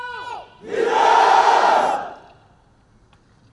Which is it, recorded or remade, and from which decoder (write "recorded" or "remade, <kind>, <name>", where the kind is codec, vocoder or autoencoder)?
recorded